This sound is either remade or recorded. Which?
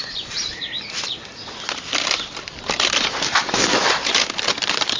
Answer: remade